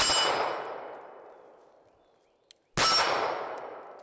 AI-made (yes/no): no